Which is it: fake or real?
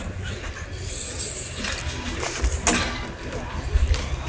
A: real